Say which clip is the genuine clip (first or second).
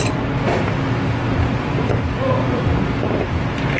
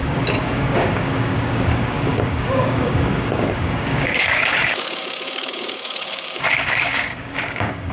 first